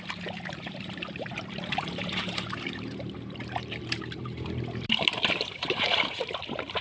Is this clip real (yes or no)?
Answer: no